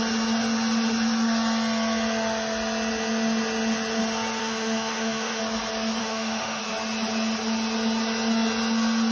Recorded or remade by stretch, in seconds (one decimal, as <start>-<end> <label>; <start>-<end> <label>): 0.0-4.4 recorded; 4.4-5.4 remade; 5.4-6.0 recorded; 6.0-6.6 remade; 6.6-9.1 recorded